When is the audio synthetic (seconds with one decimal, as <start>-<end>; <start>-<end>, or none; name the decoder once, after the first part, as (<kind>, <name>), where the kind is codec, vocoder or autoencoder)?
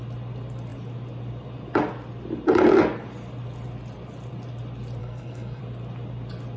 5.0-5.6 (codec, SNAC)